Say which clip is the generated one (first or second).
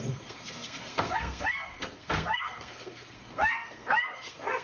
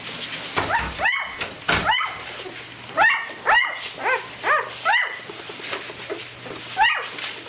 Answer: first